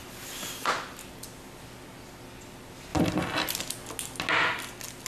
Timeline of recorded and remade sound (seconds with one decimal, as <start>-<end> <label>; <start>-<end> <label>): 0.0-5.1 recorded